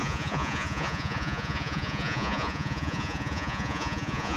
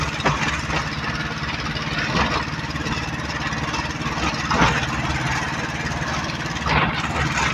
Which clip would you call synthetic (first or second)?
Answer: first